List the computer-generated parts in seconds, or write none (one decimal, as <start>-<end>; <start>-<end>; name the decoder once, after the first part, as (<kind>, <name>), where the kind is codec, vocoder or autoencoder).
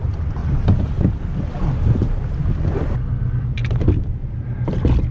0.4-1.4 (vocoder, BigVGAN v2); 3.6-4.1